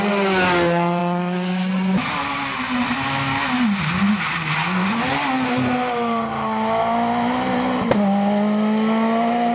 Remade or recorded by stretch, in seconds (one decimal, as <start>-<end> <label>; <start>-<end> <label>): 0.0-9.5 recorded